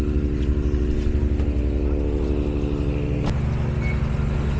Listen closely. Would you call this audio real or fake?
real